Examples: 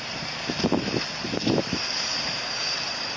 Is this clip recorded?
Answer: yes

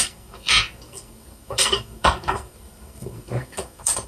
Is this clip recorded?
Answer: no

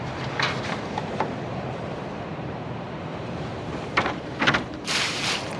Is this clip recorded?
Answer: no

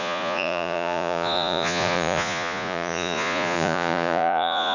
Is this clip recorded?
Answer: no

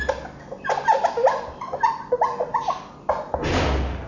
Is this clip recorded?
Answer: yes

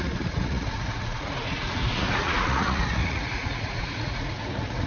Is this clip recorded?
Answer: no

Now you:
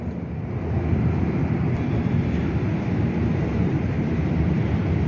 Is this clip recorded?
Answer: yes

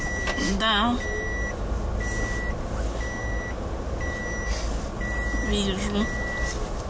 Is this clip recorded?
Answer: yes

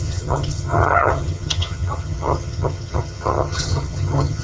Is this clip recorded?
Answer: no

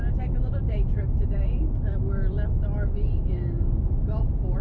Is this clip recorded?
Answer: yes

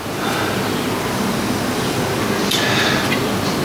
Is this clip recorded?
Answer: yes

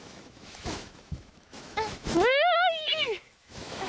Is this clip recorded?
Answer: no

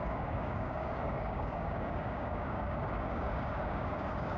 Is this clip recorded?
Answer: no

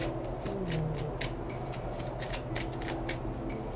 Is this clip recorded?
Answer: yes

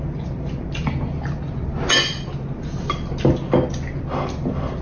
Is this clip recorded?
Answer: yes